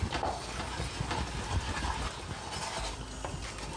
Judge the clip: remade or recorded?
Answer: recorded